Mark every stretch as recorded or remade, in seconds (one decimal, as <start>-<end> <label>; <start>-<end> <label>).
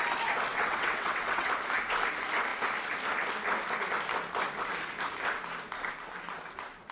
0.0-0.5 recorded; 0.5-1.5 remade; 1.5-6.9 recorded